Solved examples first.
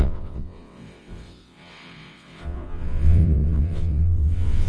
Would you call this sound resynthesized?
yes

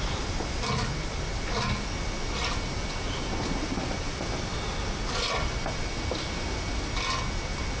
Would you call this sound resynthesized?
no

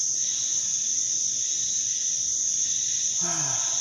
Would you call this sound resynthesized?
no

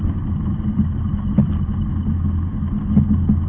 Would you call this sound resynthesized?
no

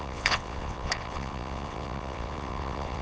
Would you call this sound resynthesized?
yes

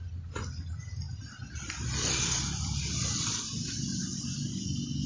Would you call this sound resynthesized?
no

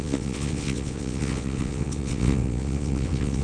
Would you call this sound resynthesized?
yes